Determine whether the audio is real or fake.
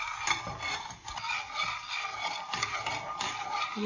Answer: real